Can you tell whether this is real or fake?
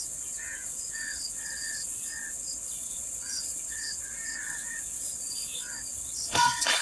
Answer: fake